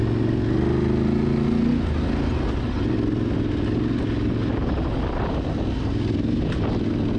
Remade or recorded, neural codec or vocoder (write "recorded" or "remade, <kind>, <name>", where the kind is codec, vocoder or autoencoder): recorded